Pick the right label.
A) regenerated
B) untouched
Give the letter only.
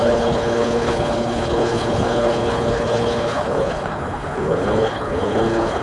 A